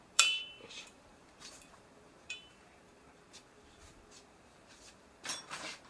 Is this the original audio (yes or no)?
no